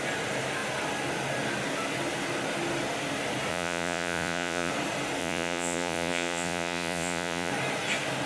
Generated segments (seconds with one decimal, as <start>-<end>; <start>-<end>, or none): 3.5-4.7; 5.2-7.5